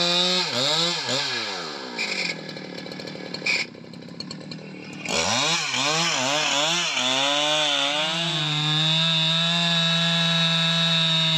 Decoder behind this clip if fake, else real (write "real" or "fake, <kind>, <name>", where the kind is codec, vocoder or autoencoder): real